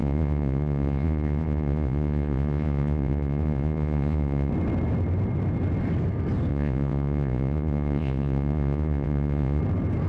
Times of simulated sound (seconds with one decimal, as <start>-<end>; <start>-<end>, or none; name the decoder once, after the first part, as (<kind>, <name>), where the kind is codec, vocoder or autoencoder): 0.0-4.5 (vocoder, Vocos); 6.5-9.6